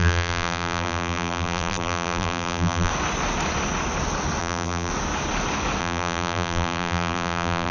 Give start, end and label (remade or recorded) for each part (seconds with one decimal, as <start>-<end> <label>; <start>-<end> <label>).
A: 0.0-2.9 remade; 2.9-4.4 recorded; 4.4-4.9 remade; 4.9-5.8 recorded; 5.8-7.7 remade